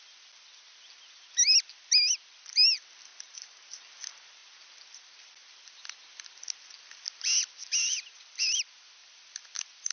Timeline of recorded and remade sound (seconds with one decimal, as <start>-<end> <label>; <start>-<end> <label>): 0.0-3.1 recorded; 3.1-3.8 remade; 3.8-9.9 recorded